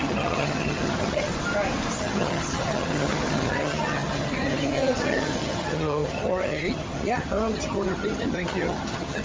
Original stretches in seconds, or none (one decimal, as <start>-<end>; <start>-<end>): 1.3-2.0